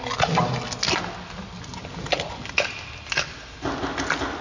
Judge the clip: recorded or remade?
recorded